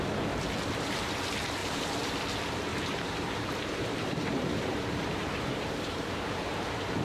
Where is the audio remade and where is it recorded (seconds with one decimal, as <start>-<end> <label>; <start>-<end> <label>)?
0.0-1.6 recorded; 1.6-2.1 remade; 2.1-2.7 recorded; 2.7-7.0 remade

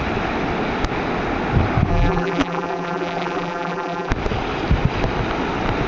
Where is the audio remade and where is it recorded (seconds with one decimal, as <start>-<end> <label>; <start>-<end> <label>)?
0.0-1.9 recorded; 1.9-4.1 remade; 4.1-5.9 recorded

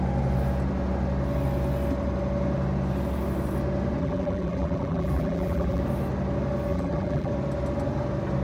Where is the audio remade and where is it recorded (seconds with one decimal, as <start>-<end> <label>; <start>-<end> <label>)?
0.0-4.0 recorded; 4.0-5.8 remade; 5.8-6.7 recorded; 6.7-7.3 remade; 7.3-8.4 recorded

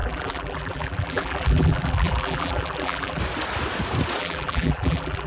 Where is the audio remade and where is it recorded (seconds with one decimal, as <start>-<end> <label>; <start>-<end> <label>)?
0.0-3.2 remade; 3.2-4.2 recorded; 4.2-5.3 remade

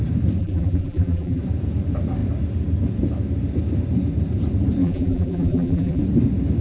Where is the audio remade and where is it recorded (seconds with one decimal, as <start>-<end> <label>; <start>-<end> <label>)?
0.0-0.4 recorded; 0.4-1.4 remade; 1.4-4.8 recorded; 4.8-6.0 remade; 6.0-6.6 recorded